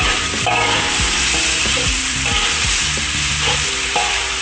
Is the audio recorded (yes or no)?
no